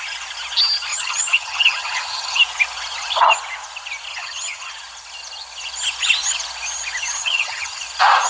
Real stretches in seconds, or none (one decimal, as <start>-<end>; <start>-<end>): 0.0-0.9; 2.4-4.1; 4.7-7.2; 7.8-8.3